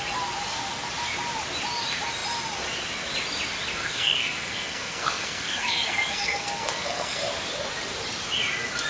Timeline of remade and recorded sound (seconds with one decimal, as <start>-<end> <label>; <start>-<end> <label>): 0.0-3.7 recorded; 3.7-7.2 remade; 7.2-8.9 recorded